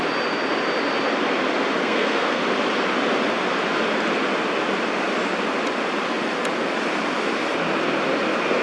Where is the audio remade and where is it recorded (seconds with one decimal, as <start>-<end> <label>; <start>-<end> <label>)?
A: 0.0-1.8 recorded; 1.8-2.4 remade; 2.4-8.6 recorded

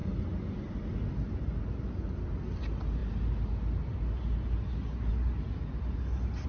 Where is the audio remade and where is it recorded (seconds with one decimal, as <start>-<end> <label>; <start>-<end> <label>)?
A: 0.0-6.5 recorded

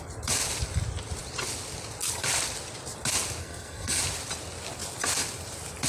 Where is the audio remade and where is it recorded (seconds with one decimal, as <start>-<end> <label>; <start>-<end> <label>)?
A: 0.0-3.4 recorded; 3.4-4.0 remade; 4.0-5.9 recorded

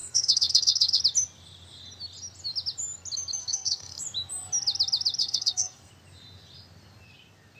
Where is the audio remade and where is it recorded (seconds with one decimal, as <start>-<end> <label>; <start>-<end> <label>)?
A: 0.0-1.0 remade; 1.0-3.4 recorded; 3.4-4.0 remade; 4.0-5.2 recorded; 5.2-5.9 remade; 5.9-7.6 recorded

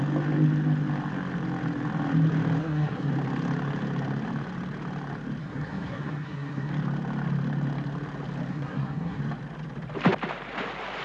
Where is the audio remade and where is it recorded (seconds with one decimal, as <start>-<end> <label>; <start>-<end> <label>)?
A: 0.0-2.6 recorded; 2.6-3.1 remade; 3.1-5.4 recorded; 5.4-6.7 remade; 6.7-8.5 recorded; 8.5-9.2 remade; 9.2-11.0 recorded

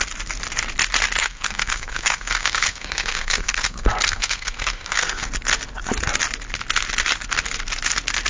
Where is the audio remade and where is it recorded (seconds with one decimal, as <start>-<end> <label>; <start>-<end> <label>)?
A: 0.0-1.2 recorded; 1.2-5.3 remade; 5.3-8.3 recorded

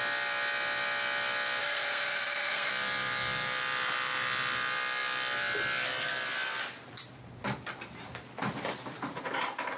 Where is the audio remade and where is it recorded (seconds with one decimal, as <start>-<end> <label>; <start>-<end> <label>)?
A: 0.0-1.6 recorded; 1.6-2.7 remade; 2.7-9.8 recorded

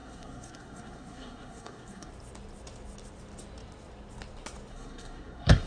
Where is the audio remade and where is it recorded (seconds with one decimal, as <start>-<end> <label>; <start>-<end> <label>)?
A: 0.0-2.1 remade; 2.1-4.7 recorded; 4.7-5.7 remade